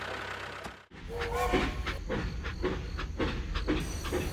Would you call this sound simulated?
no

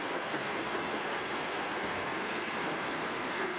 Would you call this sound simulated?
yes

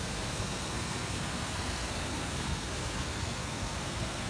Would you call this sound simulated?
yes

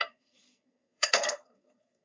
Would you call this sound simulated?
yes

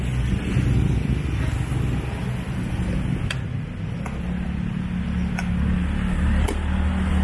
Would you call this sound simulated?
no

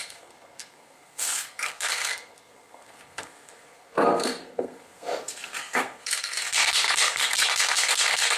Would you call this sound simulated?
yes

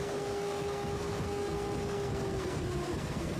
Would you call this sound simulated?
yes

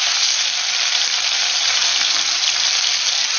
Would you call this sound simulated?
no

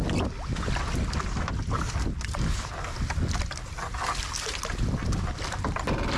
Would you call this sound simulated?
no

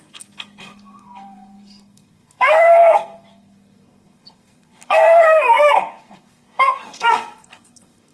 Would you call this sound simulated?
yes